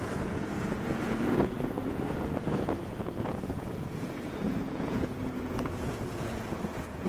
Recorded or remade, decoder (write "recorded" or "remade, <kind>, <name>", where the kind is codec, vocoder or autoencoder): remade, vocoder, Vocos